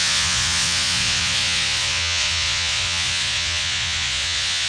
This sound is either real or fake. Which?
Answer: fake